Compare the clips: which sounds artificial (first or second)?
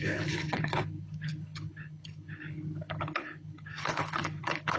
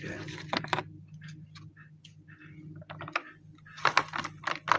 first